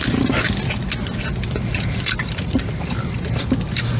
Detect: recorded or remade recorded